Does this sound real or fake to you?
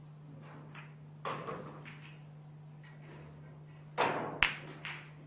real